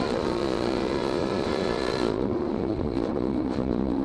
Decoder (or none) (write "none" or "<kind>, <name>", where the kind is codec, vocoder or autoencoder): vocoder, Vocos